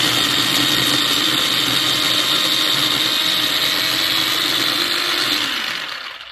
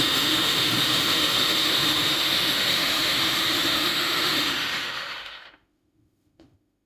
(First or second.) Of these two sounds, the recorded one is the first